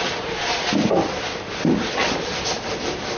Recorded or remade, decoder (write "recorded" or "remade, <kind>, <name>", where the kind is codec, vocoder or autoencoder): recorded